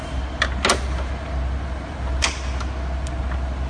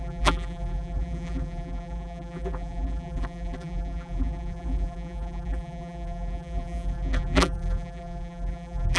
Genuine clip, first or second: first